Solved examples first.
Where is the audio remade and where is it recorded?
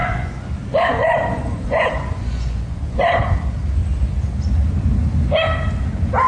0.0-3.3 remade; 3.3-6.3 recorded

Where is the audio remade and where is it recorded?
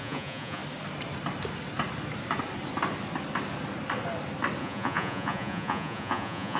0.0-0.6 remade; 0.6-4.6 recorded; 4.6-6.6 remade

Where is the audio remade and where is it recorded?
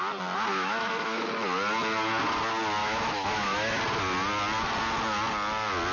0.0-0.5 recorded; 0.5-1.3 remade; 1.3-2.8 recorded; 2.8-3.8 remade; 3.8-5.9 recorded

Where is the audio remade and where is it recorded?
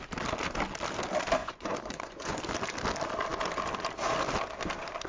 0.0-1.4 recorded; 1.4-2.4 remade; 2.4-5.1 recorded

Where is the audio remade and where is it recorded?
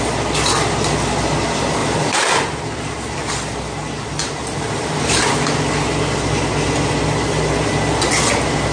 0.0-1.8 recorded; 1.8-3.3 remade; 3.3-4.2 recorded; 4.2-5.2 remade; 5.2-8.7 recorded